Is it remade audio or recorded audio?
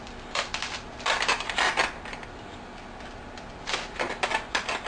recorded